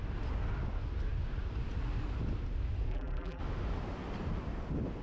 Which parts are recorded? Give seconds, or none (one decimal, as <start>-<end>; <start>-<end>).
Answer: 0.0-2.9; 3.4-5.0